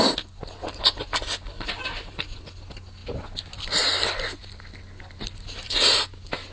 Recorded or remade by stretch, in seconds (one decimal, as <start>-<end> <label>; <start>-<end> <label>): 0.0-6.5 recorded